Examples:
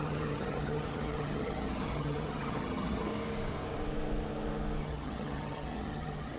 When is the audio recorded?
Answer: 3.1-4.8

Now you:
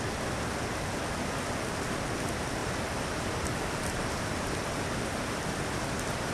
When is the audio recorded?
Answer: 0.0-6.3

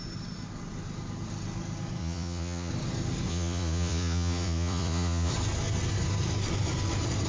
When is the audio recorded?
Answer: 0.0-2.0; 2.7-3.3; 5.3-7.3

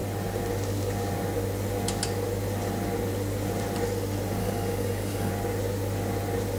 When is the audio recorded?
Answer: 0.0-4.4; 5.3-6.6

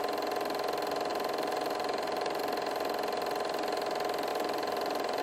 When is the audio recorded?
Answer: 0.0-1.1; 2.4-4.3